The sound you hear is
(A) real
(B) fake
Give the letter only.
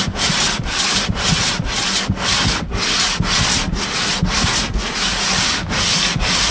A